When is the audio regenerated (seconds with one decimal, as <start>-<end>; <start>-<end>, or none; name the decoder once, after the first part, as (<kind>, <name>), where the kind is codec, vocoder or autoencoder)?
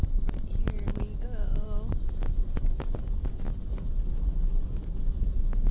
3.2-5.7 (vocoder, Vocos)